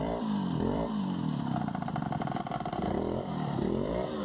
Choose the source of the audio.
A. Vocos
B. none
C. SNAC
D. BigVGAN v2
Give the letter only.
D